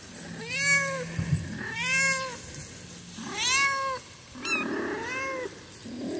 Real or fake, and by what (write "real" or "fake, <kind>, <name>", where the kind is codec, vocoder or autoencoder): real